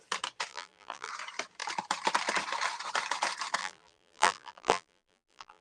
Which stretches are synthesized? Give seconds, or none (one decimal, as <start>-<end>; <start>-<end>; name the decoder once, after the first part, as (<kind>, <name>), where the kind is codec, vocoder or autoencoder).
0.5-1.1 (vocoder, BigVGAN v2); 3.6-5.6